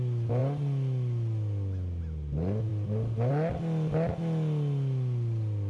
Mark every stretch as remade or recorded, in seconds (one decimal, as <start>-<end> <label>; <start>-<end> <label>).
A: 0.0-5.7 recorded